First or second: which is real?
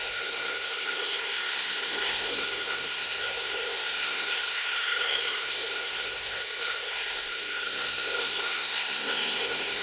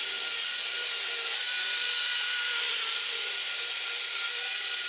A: second